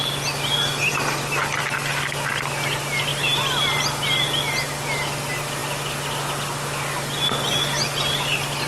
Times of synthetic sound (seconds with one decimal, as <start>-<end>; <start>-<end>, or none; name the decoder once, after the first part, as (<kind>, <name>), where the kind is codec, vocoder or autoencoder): none